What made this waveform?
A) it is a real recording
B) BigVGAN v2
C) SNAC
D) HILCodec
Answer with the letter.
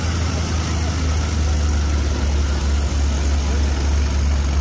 A